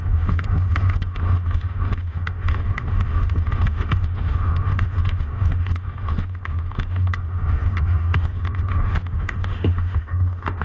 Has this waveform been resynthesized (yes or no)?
yes